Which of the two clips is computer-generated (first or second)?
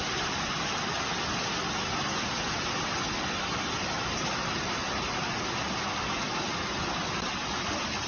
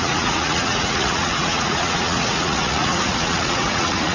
second